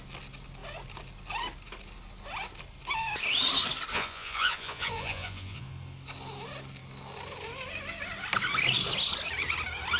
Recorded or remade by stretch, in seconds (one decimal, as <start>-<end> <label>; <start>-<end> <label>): 0.0-3.9 recorded; 3.9-5.7 remade; 5.7-10.0 recorded